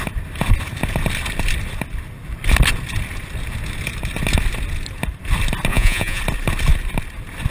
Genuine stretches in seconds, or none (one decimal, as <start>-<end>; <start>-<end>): 0.0-5.7; 6.2-7.5